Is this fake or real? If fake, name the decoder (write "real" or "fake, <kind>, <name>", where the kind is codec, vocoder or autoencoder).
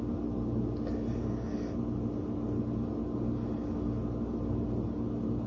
real